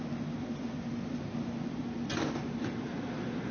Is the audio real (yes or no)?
yes